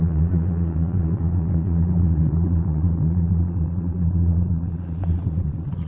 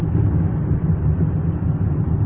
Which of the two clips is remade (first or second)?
first